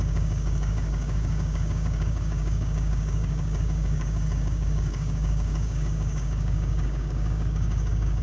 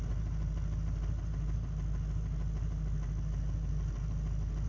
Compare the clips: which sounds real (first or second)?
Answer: second